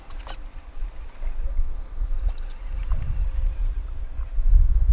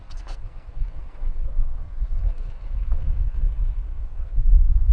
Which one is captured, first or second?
first